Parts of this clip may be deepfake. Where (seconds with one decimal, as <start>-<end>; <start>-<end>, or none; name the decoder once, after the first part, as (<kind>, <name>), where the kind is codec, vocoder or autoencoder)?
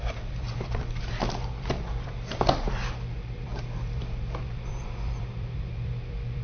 0.0-6.4 (vocoder, BigVGAN v2)